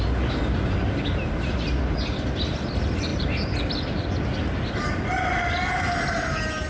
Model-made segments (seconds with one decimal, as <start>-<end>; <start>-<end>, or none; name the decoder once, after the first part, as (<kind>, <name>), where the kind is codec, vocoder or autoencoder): none